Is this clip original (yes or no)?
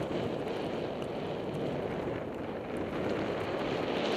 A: yes